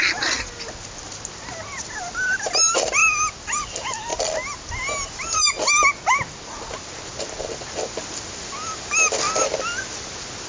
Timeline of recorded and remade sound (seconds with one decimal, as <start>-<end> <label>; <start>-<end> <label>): 0.0-10.5 recorded